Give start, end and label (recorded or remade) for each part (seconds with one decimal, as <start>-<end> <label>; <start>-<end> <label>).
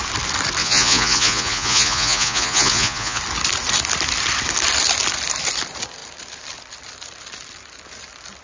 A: 0.0-0.6 recorded; 0.6-3.2 remade; 3.2-8.4 recorded